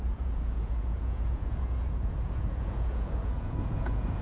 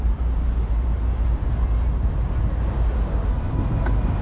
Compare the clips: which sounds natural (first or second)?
second